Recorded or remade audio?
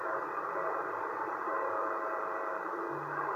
recorded